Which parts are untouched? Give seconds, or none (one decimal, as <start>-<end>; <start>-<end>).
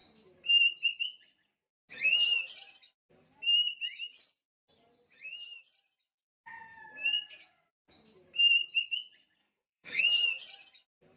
0.0-9.4; 10.0-11.2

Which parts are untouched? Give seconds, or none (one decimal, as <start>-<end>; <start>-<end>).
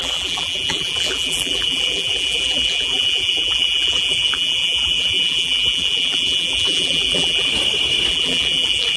7.5-8.1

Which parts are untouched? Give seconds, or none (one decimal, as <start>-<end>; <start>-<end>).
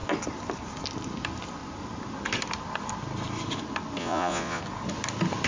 0.0-4.0; 4.6-5.5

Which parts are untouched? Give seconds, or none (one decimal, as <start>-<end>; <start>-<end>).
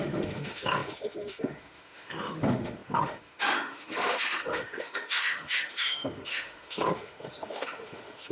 none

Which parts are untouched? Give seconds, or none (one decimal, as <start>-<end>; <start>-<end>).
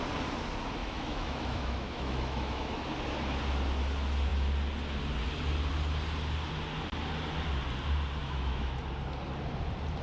0.0-0.8; 2.8-8.2; 8.8-10.0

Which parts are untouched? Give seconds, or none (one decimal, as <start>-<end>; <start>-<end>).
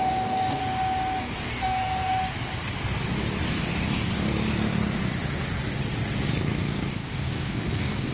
0.6-1.2; 2.1-3.5; 4.1-6.9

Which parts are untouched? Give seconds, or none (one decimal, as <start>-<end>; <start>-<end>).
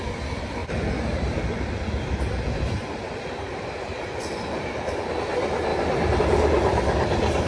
5.7-6.2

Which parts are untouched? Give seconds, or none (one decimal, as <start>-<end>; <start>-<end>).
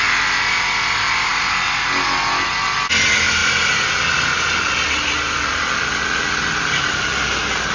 0.0-7.7